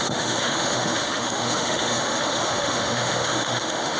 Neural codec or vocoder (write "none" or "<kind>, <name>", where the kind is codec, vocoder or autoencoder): autoencoder, DAC-VAE